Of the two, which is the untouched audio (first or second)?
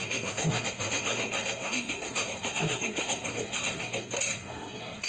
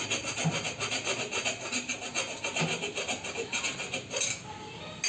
second